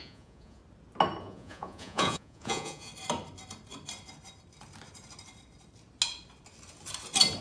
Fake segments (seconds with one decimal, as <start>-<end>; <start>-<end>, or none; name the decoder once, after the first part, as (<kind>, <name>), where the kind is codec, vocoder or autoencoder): 0.0-0.6 (vocoder, Vocos); 1.2-2.9